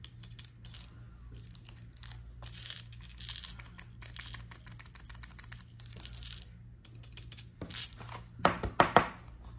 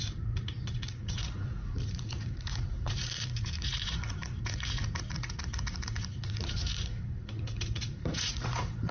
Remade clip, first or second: second